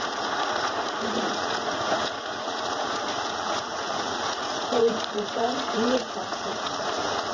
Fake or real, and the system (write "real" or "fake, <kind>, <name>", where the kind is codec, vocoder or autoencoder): fake, vocoder, Vocos